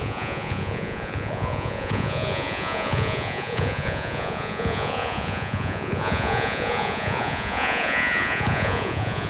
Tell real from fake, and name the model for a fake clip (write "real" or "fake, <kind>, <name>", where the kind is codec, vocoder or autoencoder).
fake, vocoder, Vocos